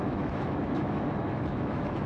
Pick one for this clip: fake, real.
fake